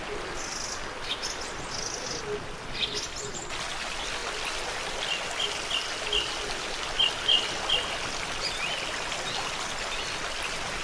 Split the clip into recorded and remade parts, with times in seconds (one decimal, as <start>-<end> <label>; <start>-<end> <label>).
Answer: 0.0-10.8 recorded